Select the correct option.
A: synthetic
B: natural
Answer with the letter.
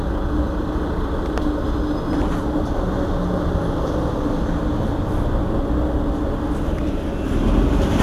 B